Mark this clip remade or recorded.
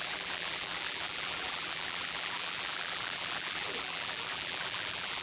remade